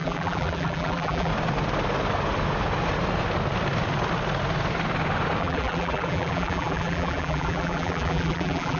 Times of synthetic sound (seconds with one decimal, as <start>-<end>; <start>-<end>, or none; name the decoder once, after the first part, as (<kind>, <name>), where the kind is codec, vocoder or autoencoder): 0.0-1.3 (vocoder, BigVGAN v2); 5.4-8.8